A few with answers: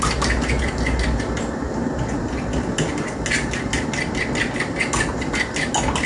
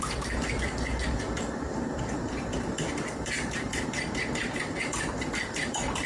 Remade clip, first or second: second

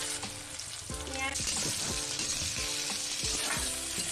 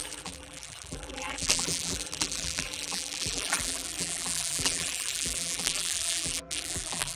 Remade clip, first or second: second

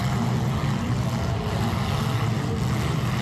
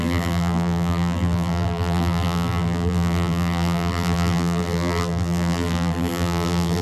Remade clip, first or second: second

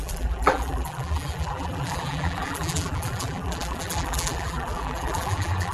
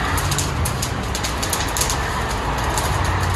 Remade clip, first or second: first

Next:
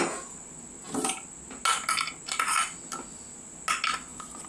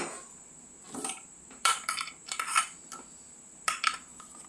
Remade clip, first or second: second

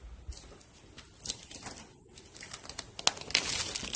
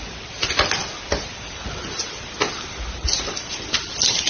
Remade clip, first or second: second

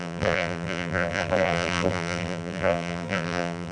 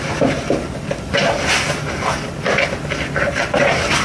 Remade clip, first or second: first